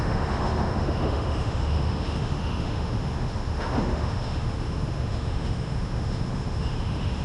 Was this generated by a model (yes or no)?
yes